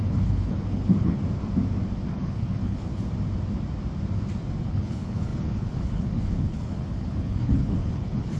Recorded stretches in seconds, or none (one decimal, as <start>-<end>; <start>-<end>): 1.2-2.1; 2.9-4.6